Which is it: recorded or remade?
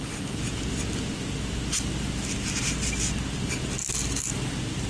recorded